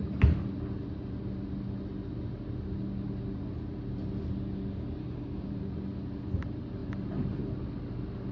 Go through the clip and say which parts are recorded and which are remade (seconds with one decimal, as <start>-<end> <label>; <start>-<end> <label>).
0.0-5.0 recorded; 5.0-5.5 remade; 5.5-8.3 recorded